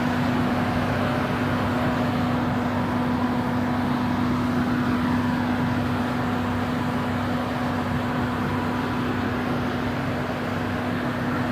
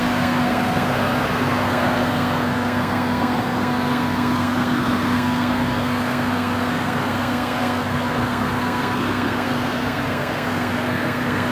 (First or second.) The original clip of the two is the first